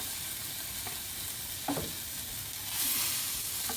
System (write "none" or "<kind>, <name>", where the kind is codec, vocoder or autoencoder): none